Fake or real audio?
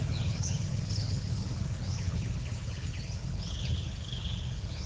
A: fake